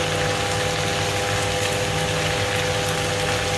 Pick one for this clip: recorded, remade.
recorded